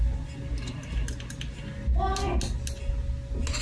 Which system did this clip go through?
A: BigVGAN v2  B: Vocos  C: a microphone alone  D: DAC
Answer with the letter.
C